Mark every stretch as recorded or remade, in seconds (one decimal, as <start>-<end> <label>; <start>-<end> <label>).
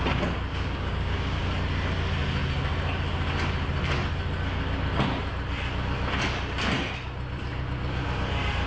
0.0-0.5 recorded; 0.5-1.4 remade; 1.4-8.7 recorded